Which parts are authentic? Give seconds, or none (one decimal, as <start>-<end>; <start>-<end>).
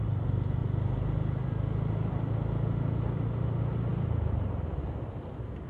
0.0-5.7